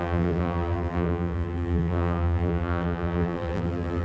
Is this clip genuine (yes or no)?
no